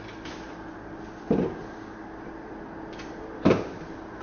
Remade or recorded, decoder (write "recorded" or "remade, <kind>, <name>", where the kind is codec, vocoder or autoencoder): recorded